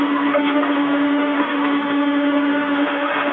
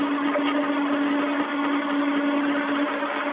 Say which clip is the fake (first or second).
first